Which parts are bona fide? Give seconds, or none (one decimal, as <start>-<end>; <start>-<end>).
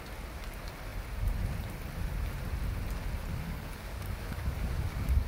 0.0-3.3